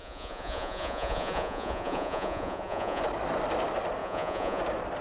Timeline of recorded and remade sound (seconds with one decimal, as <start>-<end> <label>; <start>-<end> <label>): 0.0-3.0 remade; 3.0-4.0 recorded; 4.0-4.6 remade; 4.6-5.0 recorded